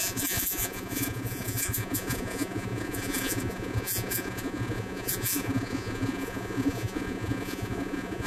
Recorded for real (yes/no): no